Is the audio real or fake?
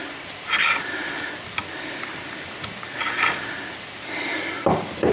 real